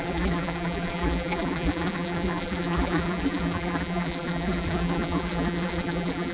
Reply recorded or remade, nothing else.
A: remade